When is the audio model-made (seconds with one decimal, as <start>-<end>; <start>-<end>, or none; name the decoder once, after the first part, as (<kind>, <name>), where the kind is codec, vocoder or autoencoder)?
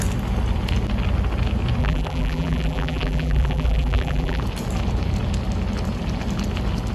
1.8-4.4 (vocoder, BigVGAN v2)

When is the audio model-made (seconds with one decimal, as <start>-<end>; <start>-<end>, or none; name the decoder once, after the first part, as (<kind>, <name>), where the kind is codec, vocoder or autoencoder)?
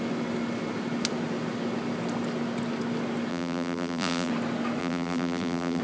3.3-4.3 (vocoder, BigVGAN v2); 4.8-5.8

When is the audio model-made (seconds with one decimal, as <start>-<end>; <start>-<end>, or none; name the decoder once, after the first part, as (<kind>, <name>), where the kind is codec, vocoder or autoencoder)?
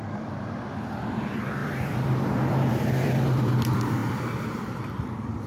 0.0-5.5 (vocoder, BigVGAN v2)